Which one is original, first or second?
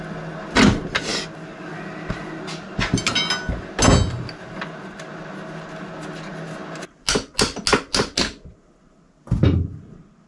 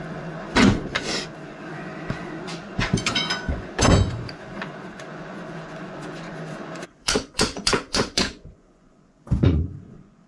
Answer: first